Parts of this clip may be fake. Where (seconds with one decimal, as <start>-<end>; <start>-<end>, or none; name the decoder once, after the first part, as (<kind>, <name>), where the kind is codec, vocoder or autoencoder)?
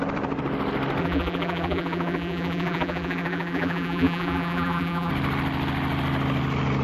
1.0-5.1 (vocoder, BigVGAN v2)